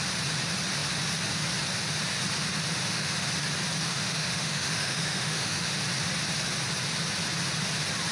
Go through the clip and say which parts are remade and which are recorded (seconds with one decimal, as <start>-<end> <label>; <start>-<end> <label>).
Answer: 0.0-2.8 recorded; 2.8-3.3 remade; 3.3-3.9 recorded; 3.9-5.8 remade; 5.8-8.1 recorded